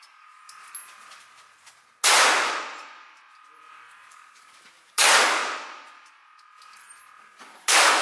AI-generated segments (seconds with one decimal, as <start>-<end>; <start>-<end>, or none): 0.0-0.4; 4.1-5.4; 7.2-8.0